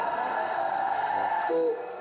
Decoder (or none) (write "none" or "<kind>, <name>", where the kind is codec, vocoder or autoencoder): codec, SNAC